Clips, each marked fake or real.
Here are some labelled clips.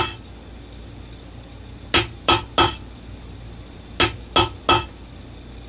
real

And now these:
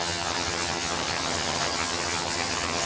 fake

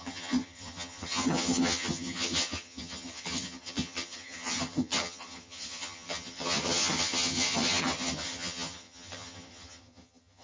fake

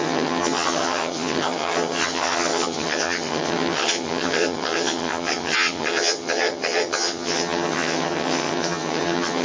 fake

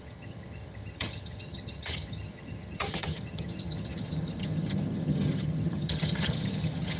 fake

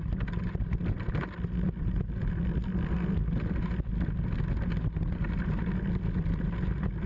real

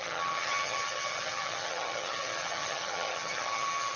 fake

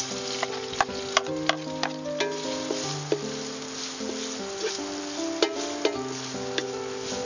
real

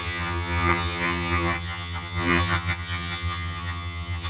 fake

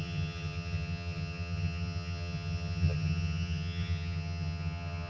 fake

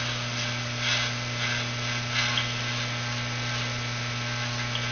real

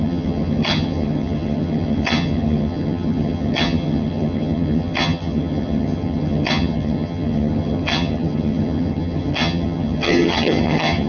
fake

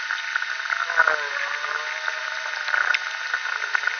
real